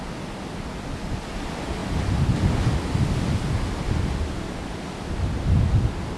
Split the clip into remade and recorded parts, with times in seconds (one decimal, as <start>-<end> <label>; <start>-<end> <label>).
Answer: 0.0-6.2 recorded